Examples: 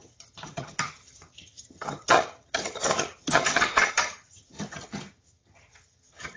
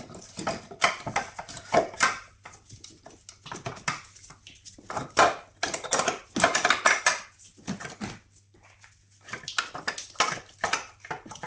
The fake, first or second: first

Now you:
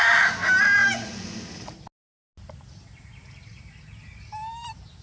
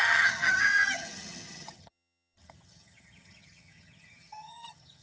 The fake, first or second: second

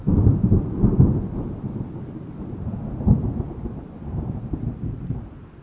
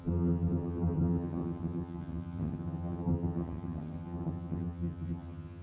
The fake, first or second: second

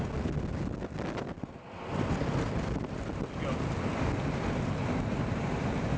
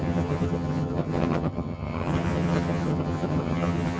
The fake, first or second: second